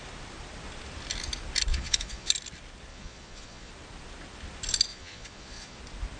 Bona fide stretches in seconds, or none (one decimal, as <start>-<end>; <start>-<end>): 0.0-1.7; 2.3-2.9; 3.7-4.9; 5.8-6.2